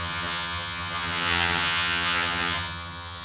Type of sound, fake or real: fake